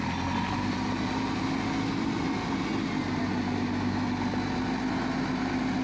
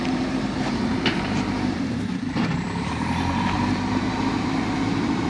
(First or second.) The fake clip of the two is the second